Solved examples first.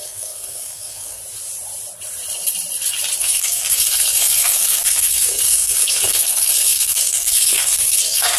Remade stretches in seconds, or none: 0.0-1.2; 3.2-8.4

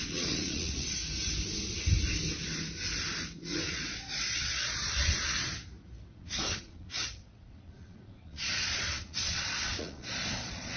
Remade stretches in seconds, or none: 0.0-1.0; 3.2-5.5; 6.1-10.8